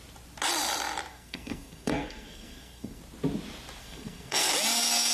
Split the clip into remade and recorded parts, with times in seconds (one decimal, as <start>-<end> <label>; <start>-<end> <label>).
0.0-1.1 recorded; 1.1-3.0 remade; 3.0-3.8 recorded; 3.8-4.5 remade; 4.5-5.1 recorded